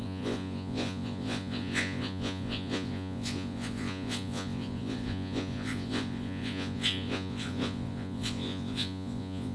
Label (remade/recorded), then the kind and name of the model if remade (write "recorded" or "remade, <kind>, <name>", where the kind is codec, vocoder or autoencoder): remade, vocoder, Vocos